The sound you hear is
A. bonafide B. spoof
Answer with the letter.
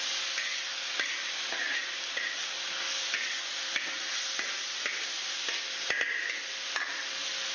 A